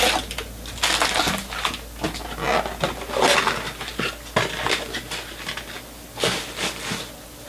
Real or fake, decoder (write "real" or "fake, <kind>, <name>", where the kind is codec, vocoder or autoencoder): real